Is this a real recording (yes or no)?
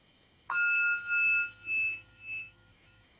no